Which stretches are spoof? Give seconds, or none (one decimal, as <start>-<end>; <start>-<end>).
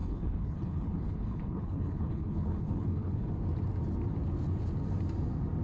0.0-3.3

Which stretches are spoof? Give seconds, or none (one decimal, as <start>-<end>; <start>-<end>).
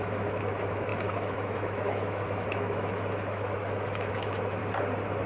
0.0-4.6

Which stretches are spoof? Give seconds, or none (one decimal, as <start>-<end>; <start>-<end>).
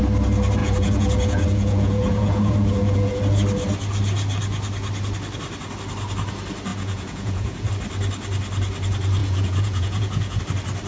0.6-3.2; 6.7-7.7; 9.2-10.4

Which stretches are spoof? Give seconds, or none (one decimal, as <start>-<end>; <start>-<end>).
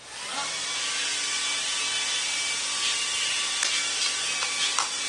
none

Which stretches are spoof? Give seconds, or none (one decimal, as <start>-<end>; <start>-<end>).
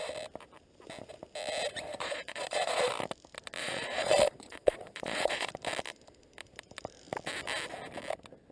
1.9-2.9; 3.6-5.5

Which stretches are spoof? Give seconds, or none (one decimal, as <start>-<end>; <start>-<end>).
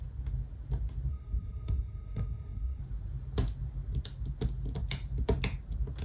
1.1-2.8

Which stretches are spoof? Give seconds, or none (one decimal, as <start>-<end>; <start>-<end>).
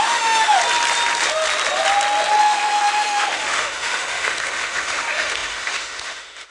0.0-0.6; 2.4-6.5